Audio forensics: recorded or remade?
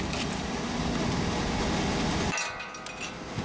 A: recorded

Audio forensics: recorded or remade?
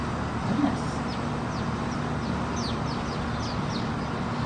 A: recorded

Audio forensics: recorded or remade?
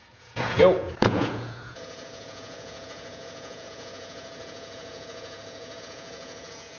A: remade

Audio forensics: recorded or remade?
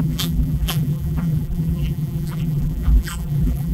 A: remade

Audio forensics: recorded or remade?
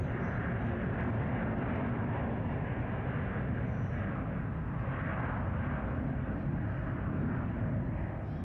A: recorded